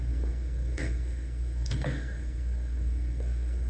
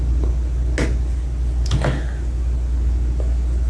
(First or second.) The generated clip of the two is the first